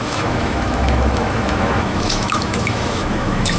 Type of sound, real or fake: fake